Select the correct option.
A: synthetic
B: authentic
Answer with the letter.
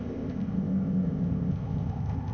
A